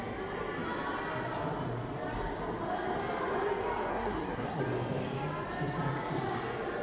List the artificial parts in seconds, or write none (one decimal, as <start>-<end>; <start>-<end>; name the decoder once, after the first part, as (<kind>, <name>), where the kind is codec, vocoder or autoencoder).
3.9-4.6 (codec, SNAC)